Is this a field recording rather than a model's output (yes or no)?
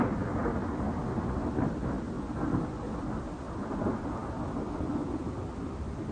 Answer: yes